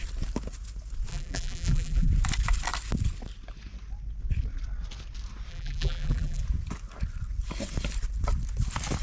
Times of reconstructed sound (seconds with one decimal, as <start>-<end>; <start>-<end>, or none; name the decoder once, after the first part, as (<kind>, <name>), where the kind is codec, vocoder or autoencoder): 1.1-2.1 (vocoder, BigVGAN v2); 5.5-6.4